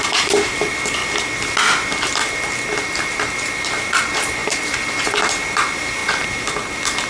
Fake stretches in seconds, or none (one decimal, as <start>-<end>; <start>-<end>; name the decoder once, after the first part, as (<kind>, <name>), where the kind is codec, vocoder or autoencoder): 0.0-1.0 (vocoder, BigVGAN v2); 3.1-6.0